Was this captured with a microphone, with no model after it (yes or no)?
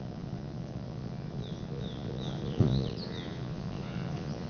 no